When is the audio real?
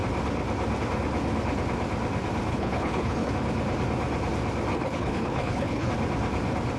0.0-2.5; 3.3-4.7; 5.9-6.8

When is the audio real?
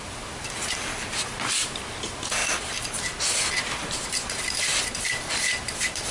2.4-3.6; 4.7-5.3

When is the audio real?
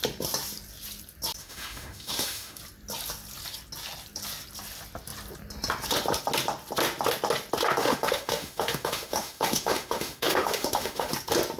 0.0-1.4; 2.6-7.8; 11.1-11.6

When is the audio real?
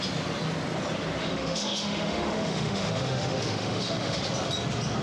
0.0-1.2; 4.2-5.0